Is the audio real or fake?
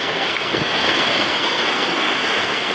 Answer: fake